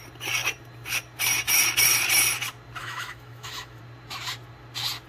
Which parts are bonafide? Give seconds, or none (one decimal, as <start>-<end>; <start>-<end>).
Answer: 0.0-2.8; 3.8-5.1